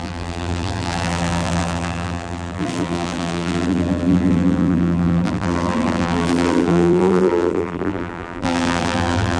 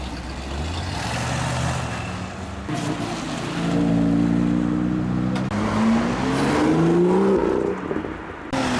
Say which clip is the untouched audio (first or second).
second